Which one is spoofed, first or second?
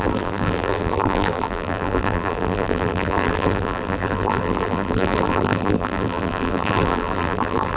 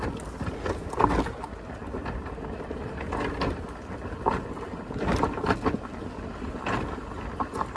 first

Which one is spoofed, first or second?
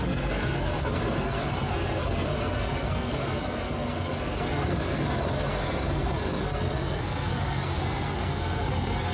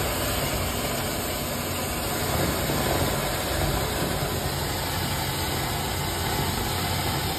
first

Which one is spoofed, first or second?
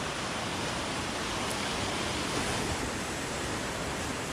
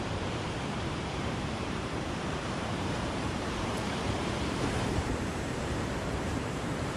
second